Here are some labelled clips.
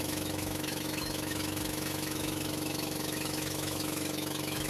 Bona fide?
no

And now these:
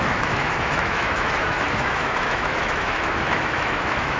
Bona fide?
no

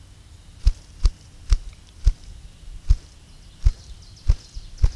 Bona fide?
yes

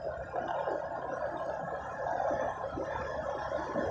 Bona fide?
yes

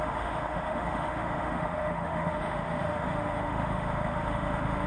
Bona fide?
no